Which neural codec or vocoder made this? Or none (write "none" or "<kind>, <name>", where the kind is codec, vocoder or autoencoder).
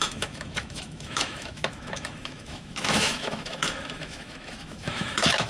autoencoder, DAC-VAE